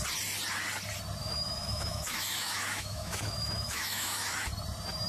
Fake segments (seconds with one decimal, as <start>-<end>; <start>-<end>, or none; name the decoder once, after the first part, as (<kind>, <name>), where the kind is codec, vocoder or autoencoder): 1.2-4.3 (autoencoder, DAC-VAE)